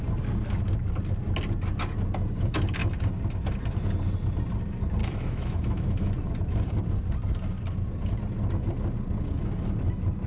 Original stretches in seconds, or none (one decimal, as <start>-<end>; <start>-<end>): 0.0-5.0; 6.1-10.3